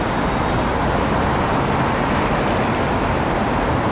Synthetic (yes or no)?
no